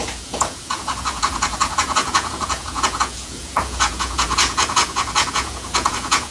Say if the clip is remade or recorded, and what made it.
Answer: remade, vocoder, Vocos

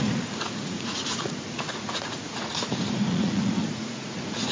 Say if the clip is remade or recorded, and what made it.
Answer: remade, vocoder, Vocos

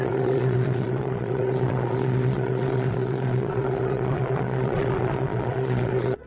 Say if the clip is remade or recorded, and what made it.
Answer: remade, vocoder, Vocos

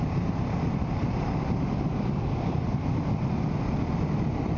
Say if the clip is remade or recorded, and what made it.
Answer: recorded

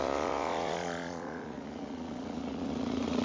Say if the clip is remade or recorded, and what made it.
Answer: remade, vocoder, Vocos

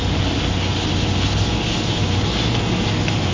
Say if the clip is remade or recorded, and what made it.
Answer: recorded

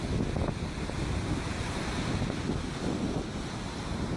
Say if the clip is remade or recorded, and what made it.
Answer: recorded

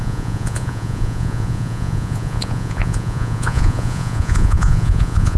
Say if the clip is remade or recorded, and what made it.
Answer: remade, vocoder, Vocos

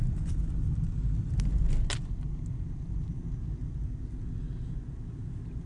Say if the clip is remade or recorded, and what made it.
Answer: recorded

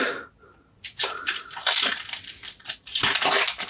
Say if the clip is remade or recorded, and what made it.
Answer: recorded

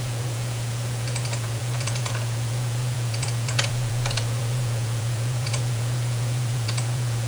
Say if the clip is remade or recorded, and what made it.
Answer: remade, vocoder, Vocos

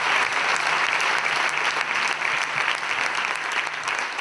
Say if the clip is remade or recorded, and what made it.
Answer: recorded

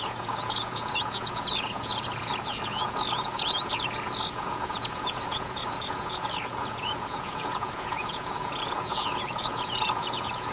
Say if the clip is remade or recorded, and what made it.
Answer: remade, vocoder, Vocos